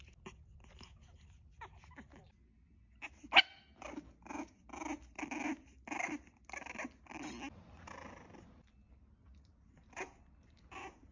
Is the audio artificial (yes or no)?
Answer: no